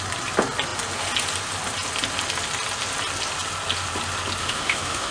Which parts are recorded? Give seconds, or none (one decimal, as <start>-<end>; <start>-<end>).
0.0-4.4